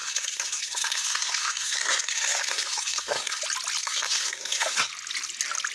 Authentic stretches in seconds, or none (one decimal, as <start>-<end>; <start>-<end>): 3.4-3.8; 4.9-5.7